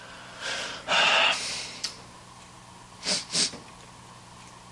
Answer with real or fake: real